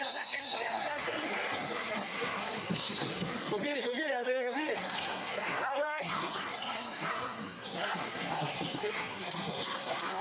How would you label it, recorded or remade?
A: remade